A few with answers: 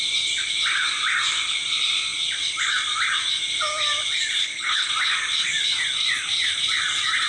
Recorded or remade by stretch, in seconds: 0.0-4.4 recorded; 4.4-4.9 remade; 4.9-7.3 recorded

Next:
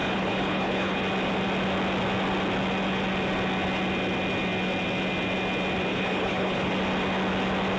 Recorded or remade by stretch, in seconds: 0.0-1.0 remade; 1.0-5.9 recorded; 5.9-6.7 remade; 6.7-7.8 recorded

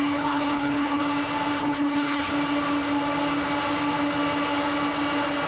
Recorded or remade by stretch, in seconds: 0.0-1.0 remade; 1.0-1.6 recorded; 1.6-2.3 remade; 2.3-5.5 recorded

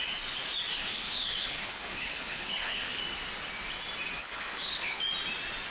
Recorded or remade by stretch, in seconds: 0.0-0.7 recorded; 0.7-3.0 remade; 3.0-4.2 recorded; 4.2-5.0 remade; 5.0-5.7 recorded

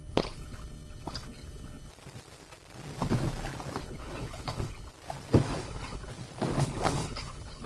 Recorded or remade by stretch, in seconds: 0.0-1.9 remade; 1.9-3.8 recorded; 3.8-4.9 remade; 4.9-5.6 recorded; 5.6-6.1 remade; 6.1-6.6 recorded; 6.6-7.7 remade

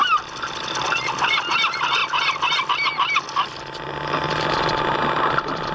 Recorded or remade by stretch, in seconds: 0.0-5.7 recorded

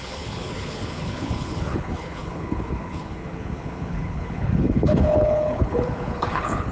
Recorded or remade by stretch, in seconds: 0.0-6.7 remade

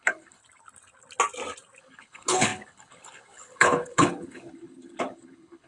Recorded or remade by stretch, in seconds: 0.0-0.4 remade; 0.4-1.8 recorded; 1.8-5.7 remade